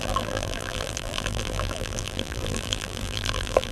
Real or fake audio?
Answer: fake